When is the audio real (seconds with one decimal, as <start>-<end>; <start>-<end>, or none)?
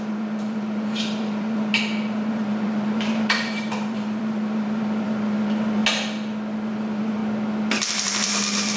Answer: 1.7-2.3; 5.8-6.7; 7.2-7.9